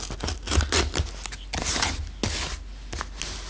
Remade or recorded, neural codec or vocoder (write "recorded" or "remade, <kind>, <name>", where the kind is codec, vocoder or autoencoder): recorded